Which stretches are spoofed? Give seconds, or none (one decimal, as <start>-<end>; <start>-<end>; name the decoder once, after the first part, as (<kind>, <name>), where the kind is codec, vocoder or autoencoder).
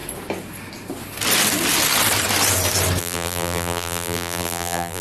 3.0-5.0 (vocoder, BigVGAN v2)